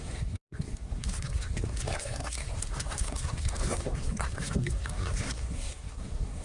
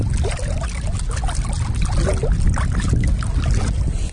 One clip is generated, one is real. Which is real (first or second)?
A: second